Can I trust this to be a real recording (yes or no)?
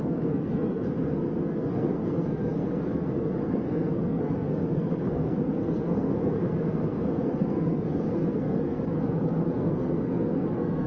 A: no